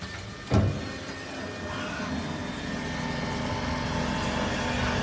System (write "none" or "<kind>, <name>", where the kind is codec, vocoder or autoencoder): none